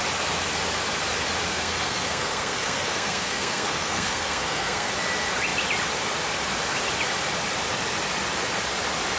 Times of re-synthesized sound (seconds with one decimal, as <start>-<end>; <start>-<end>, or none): 1.5-4.9